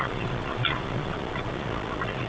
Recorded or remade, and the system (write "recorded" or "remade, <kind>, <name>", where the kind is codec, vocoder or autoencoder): remade, vocoder, Vocos